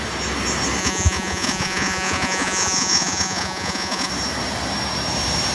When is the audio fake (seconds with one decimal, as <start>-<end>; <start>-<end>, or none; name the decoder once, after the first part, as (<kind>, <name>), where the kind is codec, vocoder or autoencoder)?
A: 0.8-4.1 (vocoder, Vocos)